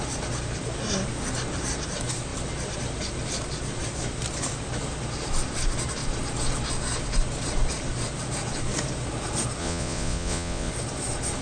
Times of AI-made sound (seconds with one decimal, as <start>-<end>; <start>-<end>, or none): 9.6-10.7